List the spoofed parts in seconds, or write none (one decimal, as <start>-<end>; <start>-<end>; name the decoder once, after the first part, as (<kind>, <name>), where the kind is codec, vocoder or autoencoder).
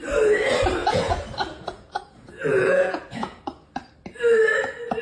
0.8-3.4 (vocoder, Vocos)